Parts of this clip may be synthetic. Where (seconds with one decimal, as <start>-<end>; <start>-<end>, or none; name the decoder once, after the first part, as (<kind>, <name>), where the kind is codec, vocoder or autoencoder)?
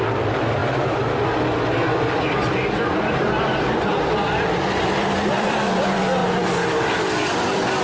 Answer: 0.0-7.8 (vocoder, BigVGAN v2)